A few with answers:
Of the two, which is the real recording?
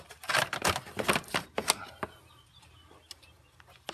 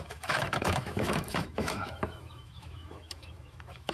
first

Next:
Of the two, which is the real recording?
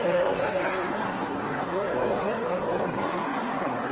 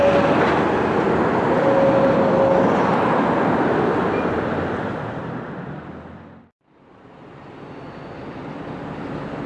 second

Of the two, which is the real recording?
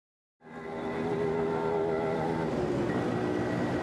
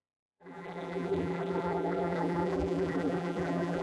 first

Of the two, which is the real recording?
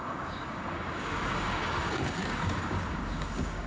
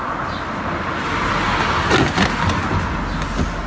second